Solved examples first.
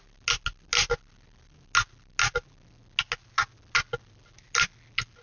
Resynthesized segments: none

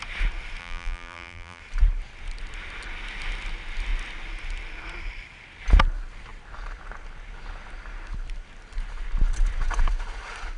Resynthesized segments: 0.6-1.6 (vocoder, BigVGAN v2)

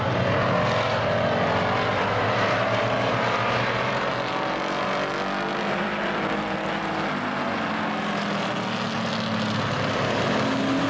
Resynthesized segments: 1.9-4.1 (vocoder, BigVGAN v2)

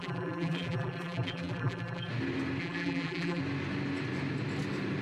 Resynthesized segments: 0.0-2.1 (vocoder, BigVGAN v2); 2.6-3.4